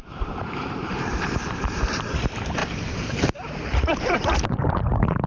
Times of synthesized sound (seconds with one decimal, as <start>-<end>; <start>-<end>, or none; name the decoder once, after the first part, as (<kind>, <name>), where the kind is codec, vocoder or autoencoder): 0.0-5.3 (vocoder, BigVGAN v2)

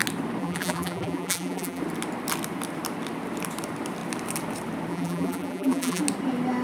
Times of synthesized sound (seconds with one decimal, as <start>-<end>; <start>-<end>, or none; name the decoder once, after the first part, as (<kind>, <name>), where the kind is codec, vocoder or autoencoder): 0.4-1.8 (vocoder, BigVGAN v2); 4.9-6.0

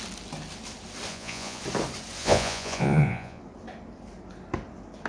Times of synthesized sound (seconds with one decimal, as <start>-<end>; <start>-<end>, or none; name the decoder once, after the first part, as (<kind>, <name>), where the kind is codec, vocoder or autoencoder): 1.1-1.6 (vocoder, Vocos); 2.2-3.4

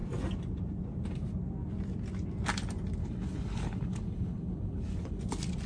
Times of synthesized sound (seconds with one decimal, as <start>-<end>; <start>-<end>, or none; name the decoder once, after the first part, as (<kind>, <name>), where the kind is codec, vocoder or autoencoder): 3.0-5.2 (codec, HILCodec)

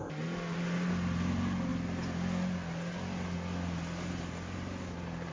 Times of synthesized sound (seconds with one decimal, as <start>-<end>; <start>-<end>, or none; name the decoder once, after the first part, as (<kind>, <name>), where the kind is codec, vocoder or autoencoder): none